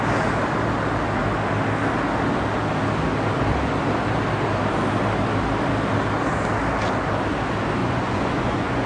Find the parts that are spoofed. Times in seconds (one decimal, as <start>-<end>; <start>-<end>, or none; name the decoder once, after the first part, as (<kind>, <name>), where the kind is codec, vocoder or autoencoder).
7.8-8.9 (vocoder, Vocos)